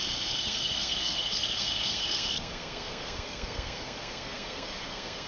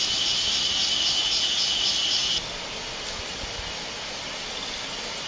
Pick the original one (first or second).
second